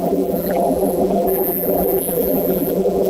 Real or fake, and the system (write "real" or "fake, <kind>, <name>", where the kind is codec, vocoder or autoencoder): fake, vocoder, BigVGAN v2